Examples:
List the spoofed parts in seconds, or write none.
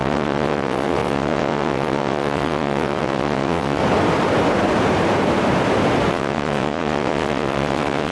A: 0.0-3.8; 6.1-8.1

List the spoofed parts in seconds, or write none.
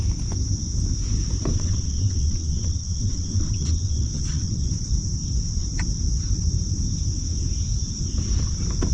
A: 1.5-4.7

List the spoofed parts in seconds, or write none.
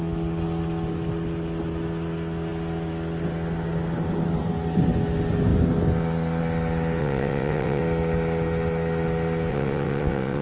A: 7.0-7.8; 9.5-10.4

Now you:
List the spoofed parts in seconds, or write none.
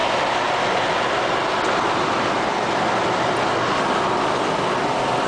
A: none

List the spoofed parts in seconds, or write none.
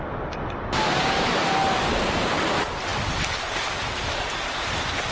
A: none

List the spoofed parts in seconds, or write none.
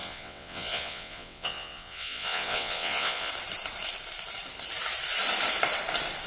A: 0.0-3.3